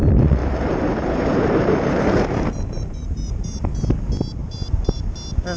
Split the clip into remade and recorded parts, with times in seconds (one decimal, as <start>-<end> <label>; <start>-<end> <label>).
0.0-0.4 recorded; 0.4-3.8 remade; 3.8-4.4 recorded; 4.4-5.0 remade; 5.0-5.6 recorded